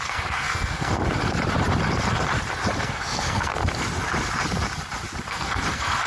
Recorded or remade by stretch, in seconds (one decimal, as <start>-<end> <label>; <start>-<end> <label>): 0.0-1.0 remade; 1.0-2.8 recorded; 2.8-3.6 remade; 3.6-5.3 recorded; 5.3-6.1 remade